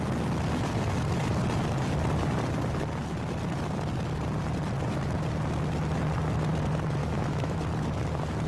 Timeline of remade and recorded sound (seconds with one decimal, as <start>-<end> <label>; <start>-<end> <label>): 0.0-7.0 recorded; 7.0-7.6 remade; 7.6-8.5 recorded

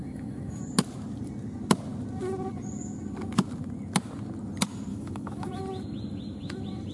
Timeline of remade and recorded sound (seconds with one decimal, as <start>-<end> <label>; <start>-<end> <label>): 0.0-0.6 remade; 0.6-4.9 recorded; 4.9-5.6 remade; 5.6-6.9 recorded